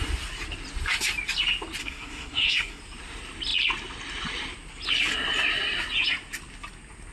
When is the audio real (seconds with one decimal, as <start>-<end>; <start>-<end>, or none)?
0.0-1.8; 2.8-7.1